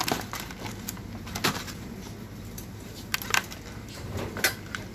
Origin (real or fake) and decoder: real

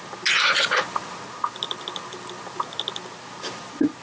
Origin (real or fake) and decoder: real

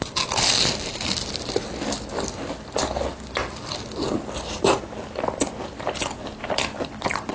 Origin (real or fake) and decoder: real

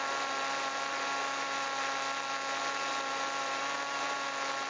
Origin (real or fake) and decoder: real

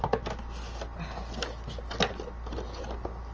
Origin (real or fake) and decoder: real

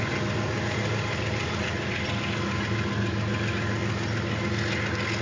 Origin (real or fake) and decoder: real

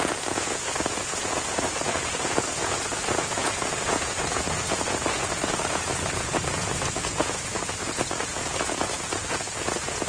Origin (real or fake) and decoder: fake, vocoder, Vocos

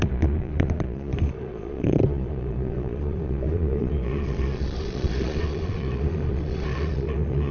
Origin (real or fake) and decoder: fake, vocoder, Vocos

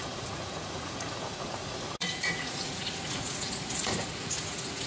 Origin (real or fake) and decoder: fake, vocoder, Vocos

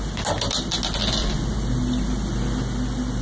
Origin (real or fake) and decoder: real